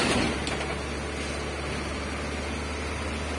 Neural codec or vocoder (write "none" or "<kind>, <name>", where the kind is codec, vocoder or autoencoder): none